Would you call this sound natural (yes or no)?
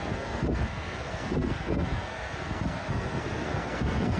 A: no